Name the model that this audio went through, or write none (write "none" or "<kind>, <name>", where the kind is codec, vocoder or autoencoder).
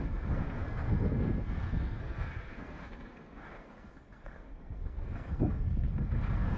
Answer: codec, SNAC